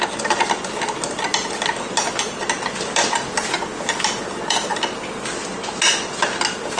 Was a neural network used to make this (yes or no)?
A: no